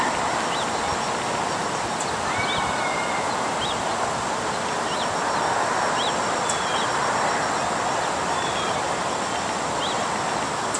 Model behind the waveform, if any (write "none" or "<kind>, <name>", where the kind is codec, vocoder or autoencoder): none